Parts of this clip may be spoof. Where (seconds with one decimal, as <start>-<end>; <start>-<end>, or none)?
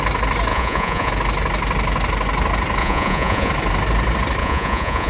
0.5-1.1; 2.8-3.5; 4.4-5.1